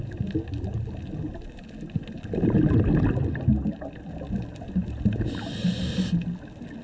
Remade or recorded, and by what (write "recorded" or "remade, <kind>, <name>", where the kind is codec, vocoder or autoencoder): recorded